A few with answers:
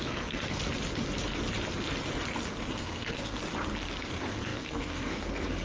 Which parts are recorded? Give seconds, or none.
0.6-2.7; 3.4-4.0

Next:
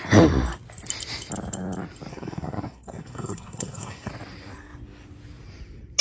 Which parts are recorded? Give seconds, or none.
0.0-2.1; 4.1-6.0

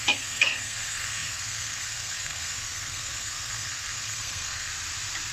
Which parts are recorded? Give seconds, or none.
4.7-5.3

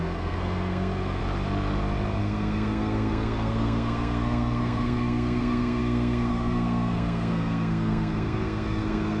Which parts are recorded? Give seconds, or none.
1.2-2.2

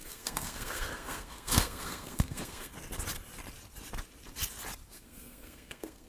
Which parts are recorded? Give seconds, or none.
2.7-4.9

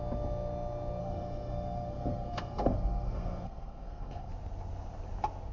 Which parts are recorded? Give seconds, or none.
0.0-1.0; 4.3-5.5